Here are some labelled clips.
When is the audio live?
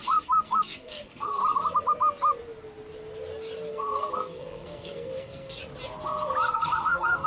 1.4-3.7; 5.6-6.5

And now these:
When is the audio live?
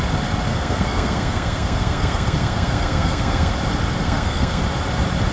0.0-0.5; 3.5-4.0; 4.6-5.3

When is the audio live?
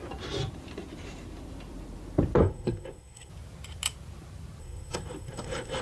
0.0-2.4; 3.3-4.6